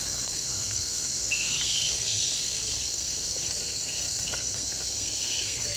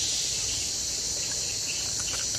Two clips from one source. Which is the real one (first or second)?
second